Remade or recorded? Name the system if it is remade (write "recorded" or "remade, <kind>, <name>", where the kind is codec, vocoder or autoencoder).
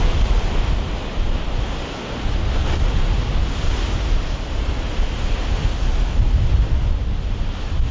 recorded